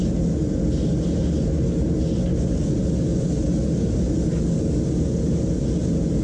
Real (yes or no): yes